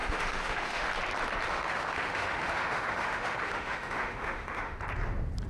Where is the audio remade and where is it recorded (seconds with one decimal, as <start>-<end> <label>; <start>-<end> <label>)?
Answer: 0.0-0.9 remade; 0.9-1.5 recorded; 1.5-4.8 remade; 4.8-5.5 recorded